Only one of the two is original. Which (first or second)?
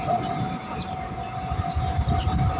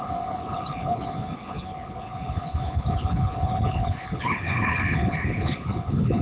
first